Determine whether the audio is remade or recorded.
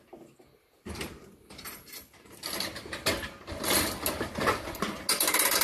recorded